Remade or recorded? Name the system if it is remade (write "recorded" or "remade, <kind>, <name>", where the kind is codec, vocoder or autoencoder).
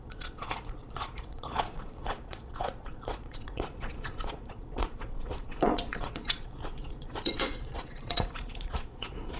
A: remade, vocoder, Vocos